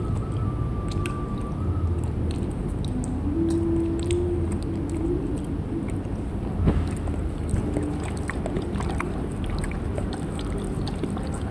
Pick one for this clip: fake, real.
real